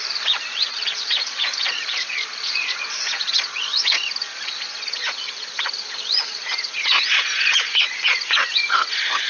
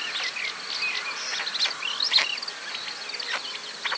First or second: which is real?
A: second